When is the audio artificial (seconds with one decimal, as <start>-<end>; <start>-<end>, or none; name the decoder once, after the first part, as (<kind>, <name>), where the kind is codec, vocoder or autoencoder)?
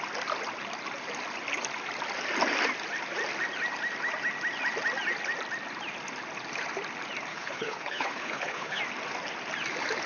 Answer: 7.3-8.8 (codec, HILCodec)